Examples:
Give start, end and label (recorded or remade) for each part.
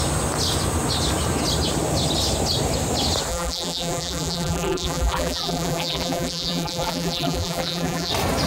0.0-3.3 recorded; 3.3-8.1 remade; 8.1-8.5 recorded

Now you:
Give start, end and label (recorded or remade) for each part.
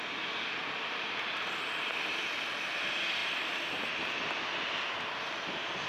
0.0-3.2 recorded; 3.2-4.3 remade; 4.3-5.9 recorded